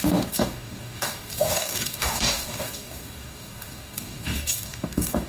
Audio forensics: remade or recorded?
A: remade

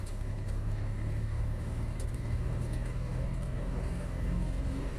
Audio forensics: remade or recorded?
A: remade